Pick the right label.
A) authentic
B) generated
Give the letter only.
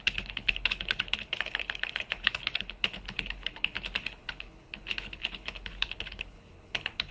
B